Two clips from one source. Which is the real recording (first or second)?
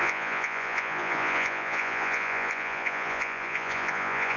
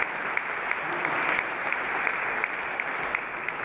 second